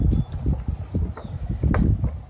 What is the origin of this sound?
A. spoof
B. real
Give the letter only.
B